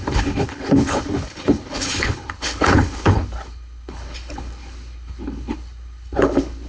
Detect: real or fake fake